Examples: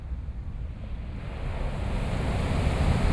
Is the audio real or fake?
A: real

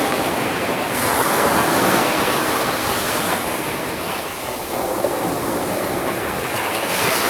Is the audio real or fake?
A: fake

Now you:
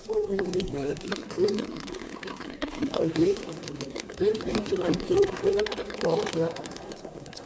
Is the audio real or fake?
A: fake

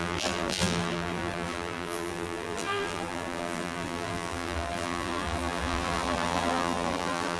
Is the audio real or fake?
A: fake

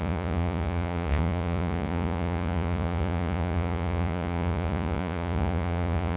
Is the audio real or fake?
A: fake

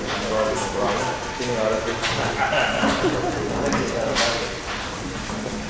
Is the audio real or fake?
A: real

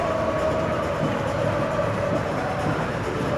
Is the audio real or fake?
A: fake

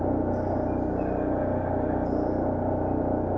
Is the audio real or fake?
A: real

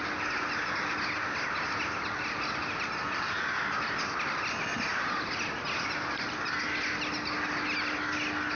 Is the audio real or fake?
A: real